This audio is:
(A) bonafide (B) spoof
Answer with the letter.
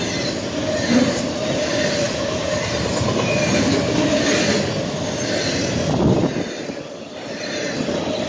A